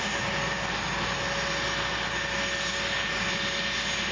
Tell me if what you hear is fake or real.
real